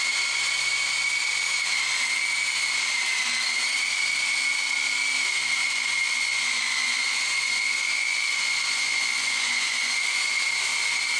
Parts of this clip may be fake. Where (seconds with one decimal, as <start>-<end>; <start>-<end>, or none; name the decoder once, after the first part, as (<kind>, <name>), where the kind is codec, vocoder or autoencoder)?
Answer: 5.6-10.4 (vocoder, Vocos)